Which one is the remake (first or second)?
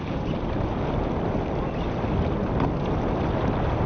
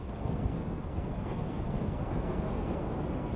second